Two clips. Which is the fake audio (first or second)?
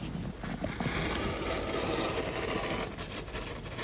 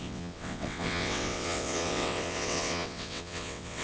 second